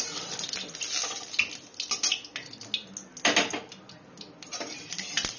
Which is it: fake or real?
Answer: real